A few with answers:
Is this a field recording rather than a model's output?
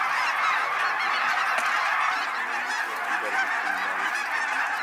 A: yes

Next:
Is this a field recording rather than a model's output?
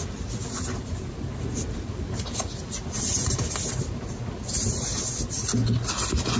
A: yes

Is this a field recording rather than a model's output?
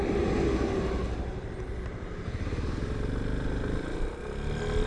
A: yes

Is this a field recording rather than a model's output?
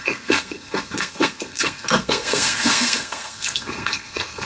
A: no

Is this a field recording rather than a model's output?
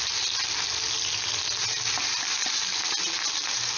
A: yes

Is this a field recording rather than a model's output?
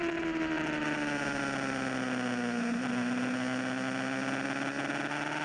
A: yes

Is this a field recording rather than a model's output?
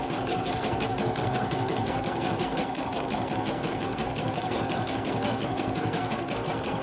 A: no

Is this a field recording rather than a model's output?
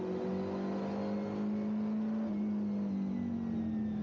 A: yes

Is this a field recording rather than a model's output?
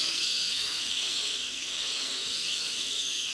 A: no